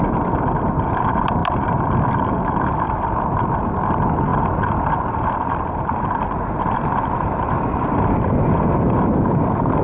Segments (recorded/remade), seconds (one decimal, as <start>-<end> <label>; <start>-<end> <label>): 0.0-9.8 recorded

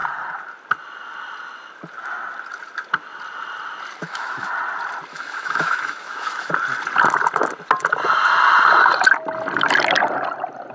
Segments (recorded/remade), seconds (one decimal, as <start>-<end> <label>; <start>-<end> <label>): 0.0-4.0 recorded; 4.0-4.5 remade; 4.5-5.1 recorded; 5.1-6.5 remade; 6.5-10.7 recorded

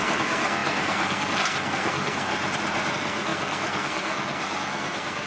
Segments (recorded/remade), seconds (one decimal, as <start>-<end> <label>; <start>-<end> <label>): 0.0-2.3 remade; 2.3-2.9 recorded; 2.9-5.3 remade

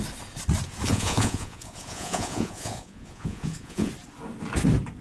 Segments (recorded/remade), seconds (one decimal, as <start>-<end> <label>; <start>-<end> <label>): 0.0-0.9 recorded; 0.9-3.9 remade; 3.9-5.0 recorded

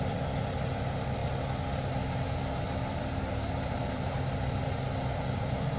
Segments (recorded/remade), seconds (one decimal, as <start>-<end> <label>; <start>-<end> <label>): 0.0-5.8 recorded

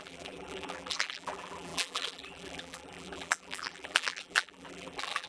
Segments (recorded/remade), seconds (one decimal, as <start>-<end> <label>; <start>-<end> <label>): 0.0-5.3 remade

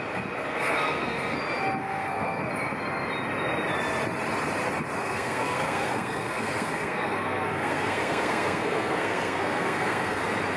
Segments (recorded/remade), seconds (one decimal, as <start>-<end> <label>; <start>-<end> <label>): 0.0-0.5 recorded; 0.5-1.4 remade; 1.4-1.8 recorded; 1.8-2.4 remade; 2.4-5.0 recorded; 5.0-10.2 remade; 10.2-10.6 recorded